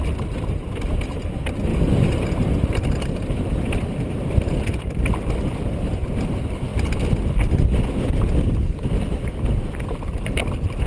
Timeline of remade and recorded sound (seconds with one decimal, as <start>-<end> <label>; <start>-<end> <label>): 0.0-10.9 recorded